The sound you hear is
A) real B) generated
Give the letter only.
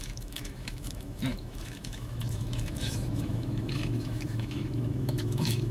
B